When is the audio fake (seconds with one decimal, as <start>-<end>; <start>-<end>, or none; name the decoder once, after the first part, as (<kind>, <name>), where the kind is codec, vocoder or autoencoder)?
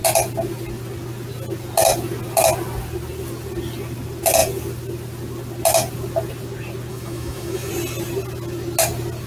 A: 6.9-7.7 (autoencoder, DAC-VAE)